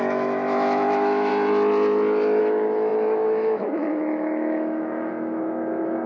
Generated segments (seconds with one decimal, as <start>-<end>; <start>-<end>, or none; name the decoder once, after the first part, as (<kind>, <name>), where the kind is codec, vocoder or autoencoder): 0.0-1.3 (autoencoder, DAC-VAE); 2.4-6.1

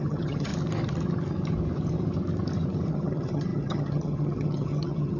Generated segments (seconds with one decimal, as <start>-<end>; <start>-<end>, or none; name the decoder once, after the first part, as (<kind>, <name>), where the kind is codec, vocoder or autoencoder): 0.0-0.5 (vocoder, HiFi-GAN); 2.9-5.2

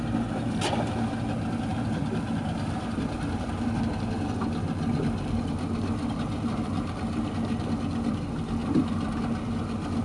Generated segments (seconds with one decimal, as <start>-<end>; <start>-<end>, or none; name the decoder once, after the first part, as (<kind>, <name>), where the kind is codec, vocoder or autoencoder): none

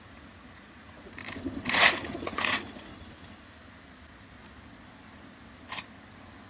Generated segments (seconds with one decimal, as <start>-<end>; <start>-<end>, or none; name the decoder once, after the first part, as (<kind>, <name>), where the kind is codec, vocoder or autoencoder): 0.0-1.2 (vocoder, Vocos); 1.7-2.9

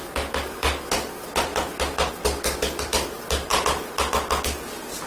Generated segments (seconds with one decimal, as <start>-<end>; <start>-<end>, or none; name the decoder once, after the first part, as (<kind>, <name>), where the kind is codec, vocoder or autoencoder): none